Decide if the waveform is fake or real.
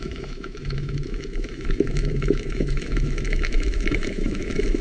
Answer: fake